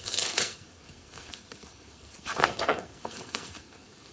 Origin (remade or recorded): remade